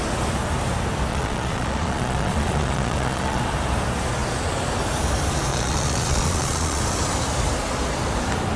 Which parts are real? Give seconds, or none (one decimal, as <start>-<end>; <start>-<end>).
0.0-1.1; 3.4-5.5; 6.8-8.6